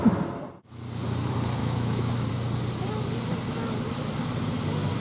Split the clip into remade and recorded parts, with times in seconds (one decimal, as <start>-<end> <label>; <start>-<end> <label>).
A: 0.0-1.6 recorded; 1.6-2.3 remade; 2.3-5.0 recorded